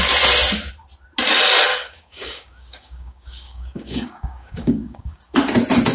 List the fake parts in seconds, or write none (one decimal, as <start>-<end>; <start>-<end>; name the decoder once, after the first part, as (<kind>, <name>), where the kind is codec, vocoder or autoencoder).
1.7-5.2 (codec, DAC)